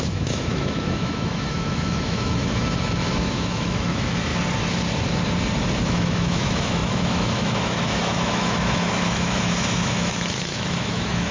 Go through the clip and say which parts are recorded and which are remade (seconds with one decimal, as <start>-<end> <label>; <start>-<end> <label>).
0.0-4.3 remade; 4.3-5.8 recorded; 5.8-11.3 remade